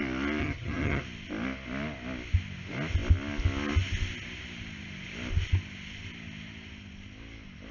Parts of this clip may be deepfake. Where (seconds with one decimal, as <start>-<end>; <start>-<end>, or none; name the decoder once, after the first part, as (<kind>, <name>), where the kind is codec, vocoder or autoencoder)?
0.4-1.0 (vocoder, HiFi-GAN)